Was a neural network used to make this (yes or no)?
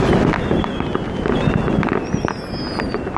no